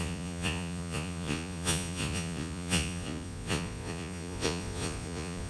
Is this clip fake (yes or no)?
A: yes